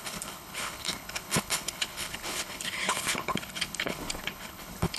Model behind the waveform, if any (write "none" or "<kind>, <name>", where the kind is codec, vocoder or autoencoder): codec, HILCodec